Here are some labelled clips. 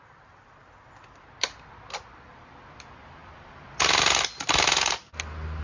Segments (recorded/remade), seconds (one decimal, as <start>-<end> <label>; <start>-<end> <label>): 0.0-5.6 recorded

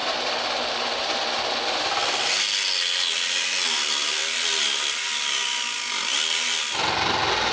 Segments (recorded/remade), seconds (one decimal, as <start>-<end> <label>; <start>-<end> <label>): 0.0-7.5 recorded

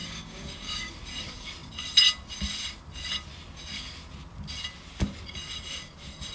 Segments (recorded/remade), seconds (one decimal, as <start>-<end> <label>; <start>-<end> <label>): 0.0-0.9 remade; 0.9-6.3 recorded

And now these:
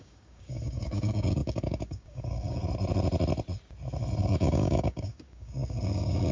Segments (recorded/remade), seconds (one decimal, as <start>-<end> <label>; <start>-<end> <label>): 0.0-2.6 remade; 2.6-4.2 recorded; 4.2-6.3 remade

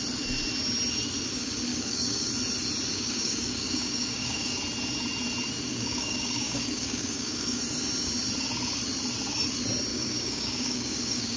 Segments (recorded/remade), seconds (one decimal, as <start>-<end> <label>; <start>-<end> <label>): 0.0-1.7 recorded; 1.7-2.3 remade; 2.3-2.9 recorded; 2.9-4.6 remade; 4.6-5.7 recorded; 5.7-7.6 remade; 7.6-9.9 recorded; 9.9-11.4 remade

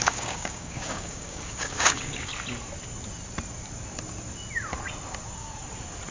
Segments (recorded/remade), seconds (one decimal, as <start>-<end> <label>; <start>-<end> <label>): 0.0-2.3 remade; 2.3-6.1 recorded